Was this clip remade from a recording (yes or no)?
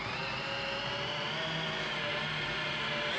yes